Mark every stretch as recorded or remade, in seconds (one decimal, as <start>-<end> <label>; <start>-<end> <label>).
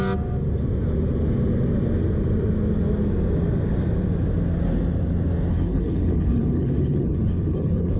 0.0-5.5 recorded; 5.5-8.0 remade